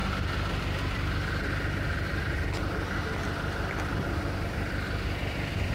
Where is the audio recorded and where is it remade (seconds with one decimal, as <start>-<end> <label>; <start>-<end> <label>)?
0.0-5.7 recorded